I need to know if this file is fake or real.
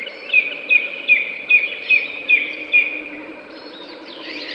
fake